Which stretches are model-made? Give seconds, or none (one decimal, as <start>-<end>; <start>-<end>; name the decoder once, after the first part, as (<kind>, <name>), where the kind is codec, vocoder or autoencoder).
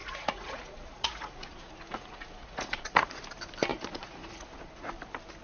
0.0-3.2 (vocoder, Vocos); 3.7-4.9